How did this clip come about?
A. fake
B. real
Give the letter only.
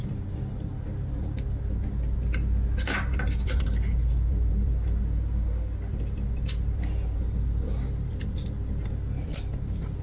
B